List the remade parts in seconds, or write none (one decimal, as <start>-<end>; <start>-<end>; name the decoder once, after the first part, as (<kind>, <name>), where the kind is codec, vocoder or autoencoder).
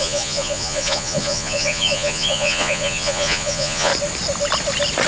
0.0-3.9 (vocoder, Vocos)